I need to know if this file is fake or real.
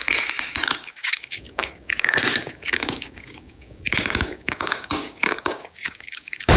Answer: fake